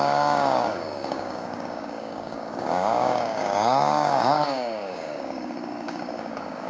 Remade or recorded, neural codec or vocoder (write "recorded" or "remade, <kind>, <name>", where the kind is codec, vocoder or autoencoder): remade, codec, DAC